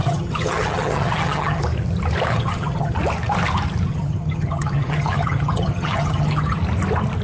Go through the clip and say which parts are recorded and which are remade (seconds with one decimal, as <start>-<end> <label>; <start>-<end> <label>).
0.0-1.6 remade; 1.6-2.3 recorded; 2.3-2.9 remade; 2.9-3.9 recorded; 3.9-6.6 remade; 6.6-7.2 recorded